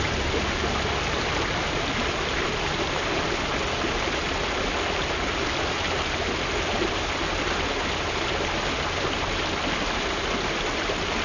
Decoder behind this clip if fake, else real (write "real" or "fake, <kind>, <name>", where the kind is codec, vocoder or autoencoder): real